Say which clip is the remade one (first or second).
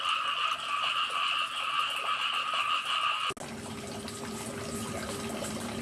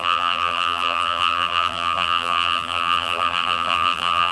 second